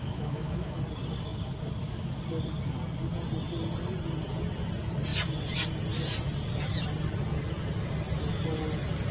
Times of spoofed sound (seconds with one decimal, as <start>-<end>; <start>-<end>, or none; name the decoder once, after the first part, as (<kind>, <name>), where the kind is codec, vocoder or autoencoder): 0.0-0.8 (autoencoder, DAC-VAE)